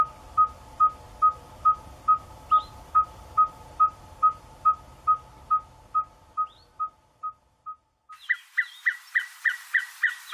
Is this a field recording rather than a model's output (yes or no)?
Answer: yes